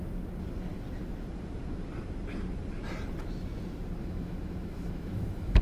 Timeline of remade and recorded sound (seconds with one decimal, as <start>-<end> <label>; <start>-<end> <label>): 0.0-4.0 recorded; 4.0-5.6 remade